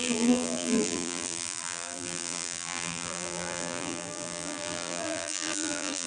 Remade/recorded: remade